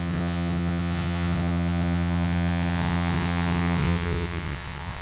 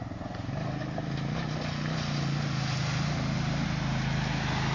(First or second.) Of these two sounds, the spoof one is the first